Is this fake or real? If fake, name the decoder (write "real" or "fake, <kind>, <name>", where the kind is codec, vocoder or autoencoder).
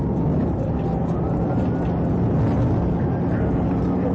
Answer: real